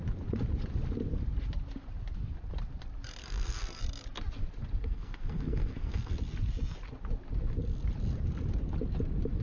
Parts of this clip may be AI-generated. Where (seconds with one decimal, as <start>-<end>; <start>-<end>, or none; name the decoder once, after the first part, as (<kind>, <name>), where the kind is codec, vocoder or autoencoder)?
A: 3.2-3.8 (codec, SNAC); 4.8-6.1